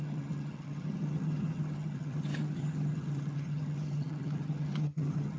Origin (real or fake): fake